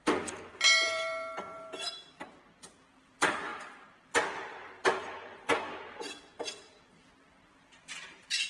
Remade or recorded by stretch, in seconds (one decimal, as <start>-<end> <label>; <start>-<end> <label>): 0.0-2.0 remade; 2.0-2.6 recorded; 2.6-8.5 remade